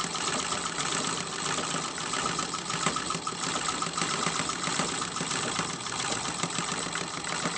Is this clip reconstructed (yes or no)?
no